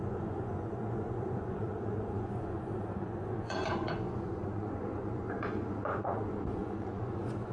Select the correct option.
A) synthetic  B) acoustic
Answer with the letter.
A